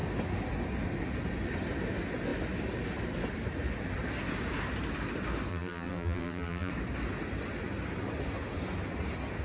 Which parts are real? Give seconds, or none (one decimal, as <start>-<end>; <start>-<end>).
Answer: 0.0-5.5; 6.7-9.4